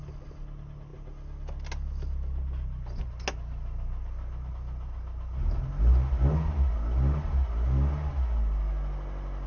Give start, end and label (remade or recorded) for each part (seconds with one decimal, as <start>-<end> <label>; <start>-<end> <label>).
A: 0.0-9.5 recorded